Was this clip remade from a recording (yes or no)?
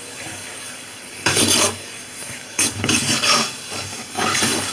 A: yes